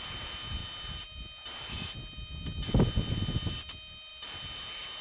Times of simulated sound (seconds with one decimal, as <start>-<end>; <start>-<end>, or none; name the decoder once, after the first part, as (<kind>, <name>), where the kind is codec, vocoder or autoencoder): none